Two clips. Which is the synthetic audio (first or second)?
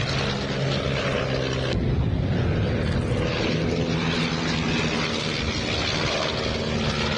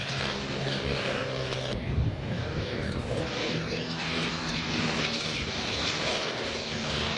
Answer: second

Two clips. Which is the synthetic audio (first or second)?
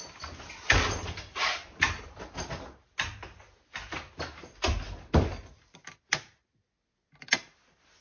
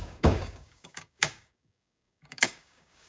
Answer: second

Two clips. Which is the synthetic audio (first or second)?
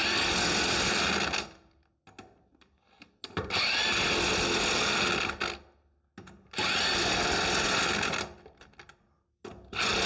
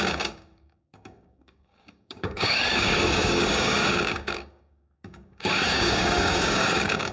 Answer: second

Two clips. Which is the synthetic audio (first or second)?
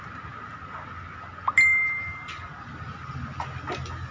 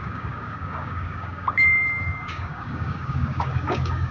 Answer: second